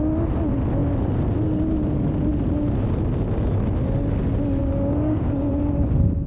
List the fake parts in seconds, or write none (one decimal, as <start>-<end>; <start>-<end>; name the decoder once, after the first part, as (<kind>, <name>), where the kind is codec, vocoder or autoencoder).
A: 4.6-5.5 (codec, DAC)